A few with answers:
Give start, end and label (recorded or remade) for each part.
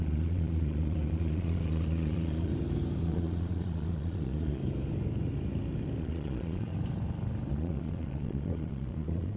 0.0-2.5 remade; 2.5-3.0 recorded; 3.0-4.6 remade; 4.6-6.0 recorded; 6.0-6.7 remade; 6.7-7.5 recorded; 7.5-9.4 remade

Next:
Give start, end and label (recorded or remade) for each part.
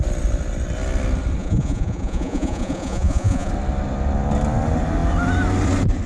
0.0-1.4 recorded; 1.4-3.5 remade; 3.5-6.1 recorded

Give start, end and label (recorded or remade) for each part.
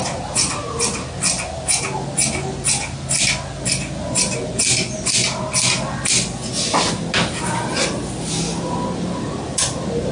0.0-10.1 recorded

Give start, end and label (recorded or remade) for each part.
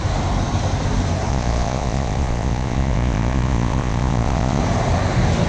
0.0-1.3 recorded; 1.3-4.6 remade; 4.6-5.5 recorded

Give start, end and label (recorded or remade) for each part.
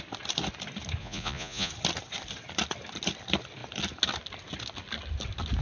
0.0-1.0 recorded; 1.0-1.7 remade; 1.7-5.6 recorded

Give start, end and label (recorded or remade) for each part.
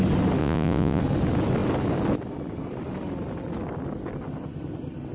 0.0-0.4 recorded; 0.4-1.0 remade; 1.0-5.1 recorded